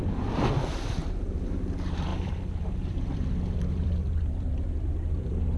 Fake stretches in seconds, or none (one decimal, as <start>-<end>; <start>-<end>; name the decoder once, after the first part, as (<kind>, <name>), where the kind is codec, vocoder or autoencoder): 1.0-1.5 (vocoder, BigVGAN v2); 2.1-5.6

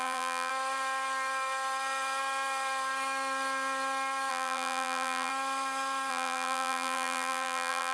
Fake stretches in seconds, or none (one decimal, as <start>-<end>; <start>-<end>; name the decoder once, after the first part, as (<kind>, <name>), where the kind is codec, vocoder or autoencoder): 0.0-0.5 (vocoder, BigVGAN v2); 4.3-5.3; 6.1-7.9